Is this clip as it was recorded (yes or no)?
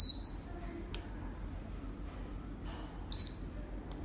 yes